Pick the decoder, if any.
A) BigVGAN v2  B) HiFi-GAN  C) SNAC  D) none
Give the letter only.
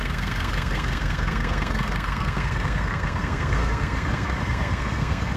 C